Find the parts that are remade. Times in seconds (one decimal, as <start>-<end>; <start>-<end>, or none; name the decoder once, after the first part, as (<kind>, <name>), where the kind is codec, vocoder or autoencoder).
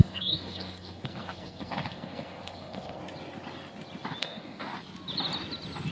0.0-3.0 (codec, SNAC); 4.2-4.7